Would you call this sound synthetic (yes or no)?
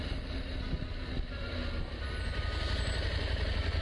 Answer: no